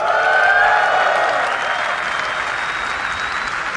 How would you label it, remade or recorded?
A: recorded